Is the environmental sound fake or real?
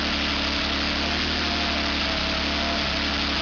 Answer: real